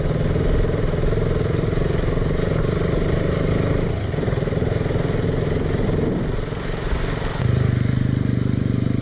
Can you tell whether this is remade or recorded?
recorded